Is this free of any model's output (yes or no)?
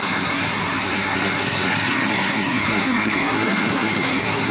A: no